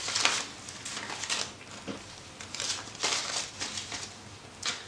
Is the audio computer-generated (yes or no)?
no